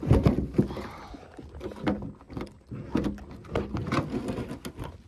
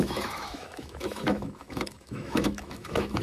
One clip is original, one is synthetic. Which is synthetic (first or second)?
second